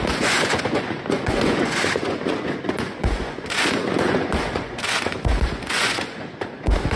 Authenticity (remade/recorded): remade